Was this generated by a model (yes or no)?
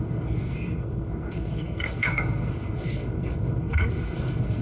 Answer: yes